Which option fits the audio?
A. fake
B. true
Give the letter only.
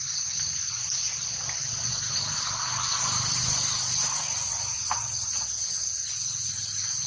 B